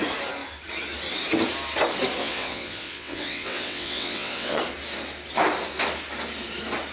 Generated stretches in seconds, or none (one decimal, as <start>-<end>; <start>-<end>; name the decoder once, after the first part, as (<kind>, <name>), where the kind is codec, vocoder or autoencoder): 2.2-4.6 (vocoder, WaveNeXt)